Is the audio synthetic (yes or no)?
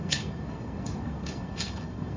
yes